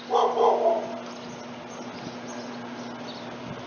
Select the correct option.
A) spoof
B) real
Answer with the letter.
B